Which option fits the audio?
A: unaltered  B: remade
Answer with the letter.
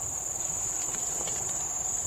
A